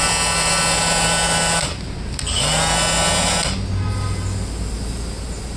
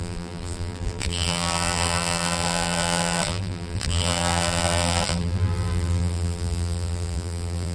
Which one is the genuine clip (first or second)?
first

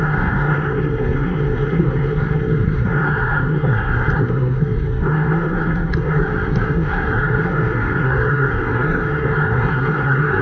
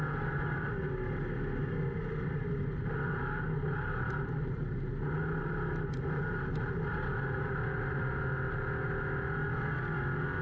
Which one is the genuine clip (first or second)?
second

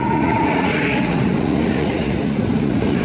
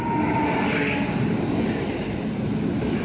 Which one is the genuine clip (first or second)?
second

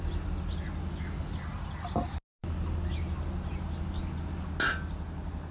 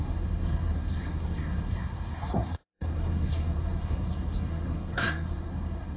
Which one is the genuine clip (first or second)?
first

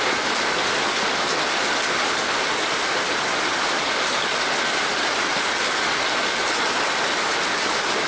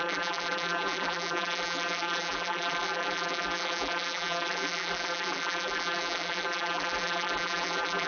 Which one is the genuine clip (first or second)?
first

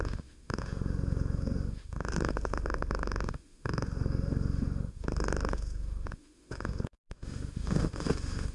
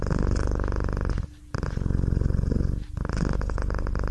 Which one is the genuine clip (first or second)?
second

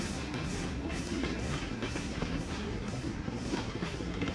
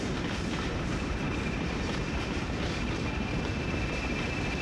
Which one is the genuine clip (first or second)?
second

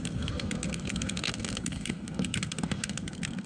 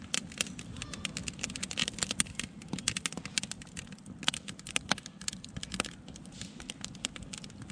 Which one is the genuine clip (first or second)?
second